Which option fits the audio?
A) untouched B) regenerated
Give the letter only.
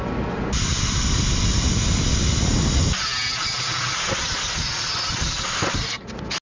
A